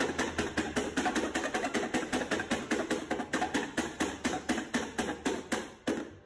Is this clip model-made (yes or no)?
no